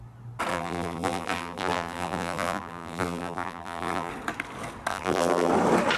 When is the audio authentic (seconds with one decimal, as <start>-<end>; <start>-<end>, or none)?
0.0-0.5; 4.1-4.9; 5.5-6.0